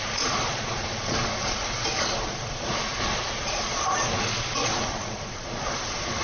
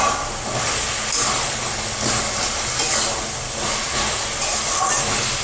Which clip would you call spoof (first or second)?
first